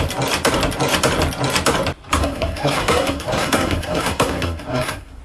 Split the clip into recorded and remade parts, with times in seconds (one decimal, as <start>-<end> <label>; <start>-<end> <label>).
0.0-2.2 recorded; 2.2-5.2 remade